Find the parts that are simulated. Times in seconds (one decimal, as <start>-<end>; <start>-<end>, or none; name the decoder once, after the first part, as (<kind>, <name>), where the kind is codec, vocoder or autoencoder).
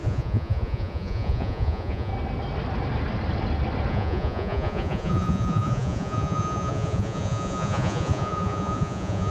0.0-2.1 (vocoder, Vocos); 3.9-9.3